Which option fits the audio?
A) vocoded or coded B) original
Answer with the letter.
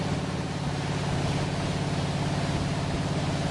B